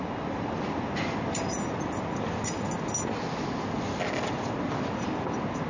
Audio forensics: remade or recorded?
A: recorded